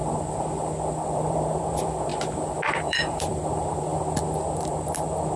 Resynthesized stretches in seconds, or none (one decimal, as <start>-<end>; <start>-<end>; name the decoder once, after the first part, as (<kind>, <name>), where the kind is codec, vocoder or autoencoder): 1.0-2.1 (vocoder, BigVGAN v2); 2.7-3.9; 4.6-5.4